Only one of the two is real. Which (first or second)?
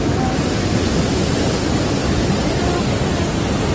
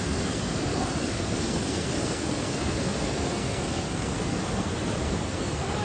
first